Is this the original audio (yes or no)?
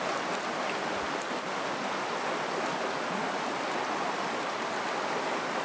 yes